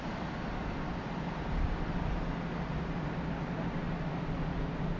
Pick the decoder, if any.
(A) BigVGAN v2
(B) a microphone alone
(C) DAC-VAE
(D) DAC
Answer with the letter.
B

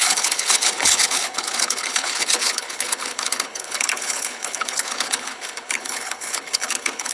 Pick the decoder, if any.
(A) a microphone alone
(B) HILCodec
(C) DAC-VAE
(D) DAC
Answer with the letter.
B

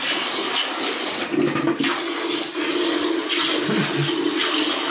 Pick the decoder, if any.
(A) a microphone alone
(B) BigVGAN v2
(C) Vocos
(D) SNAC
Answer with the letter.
A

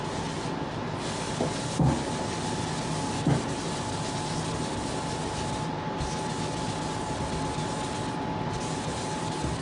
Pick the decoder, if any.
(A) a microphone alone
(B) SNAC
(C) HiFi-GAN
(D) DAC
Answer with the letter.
A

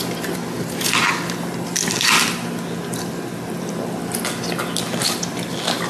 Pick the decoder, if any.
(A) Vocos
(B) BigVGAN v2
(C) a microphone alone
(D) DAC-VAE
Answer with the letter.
C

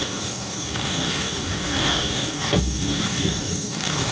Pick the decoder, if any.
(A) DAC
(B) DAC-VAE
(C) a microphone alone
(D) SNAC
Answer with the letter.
A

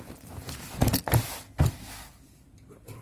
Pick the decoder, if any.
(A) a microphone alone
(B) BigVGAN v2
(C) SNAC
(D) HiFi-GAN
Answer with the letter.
A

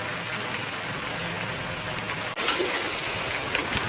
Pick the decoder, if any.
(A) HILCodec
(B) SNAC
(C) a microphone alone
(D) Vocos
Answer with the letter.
C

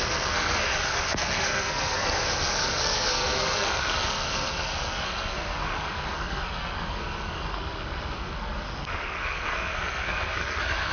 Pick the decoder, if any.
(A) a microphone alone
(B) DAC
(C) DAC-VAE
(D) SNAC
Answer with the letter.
D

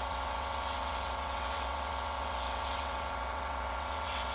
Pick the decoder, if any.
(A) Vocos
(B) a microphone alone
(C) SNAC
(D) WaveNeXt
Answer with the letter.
D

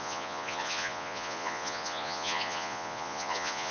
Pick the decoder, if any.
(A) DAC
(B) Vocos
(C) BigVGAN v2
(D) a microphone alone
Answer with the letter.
B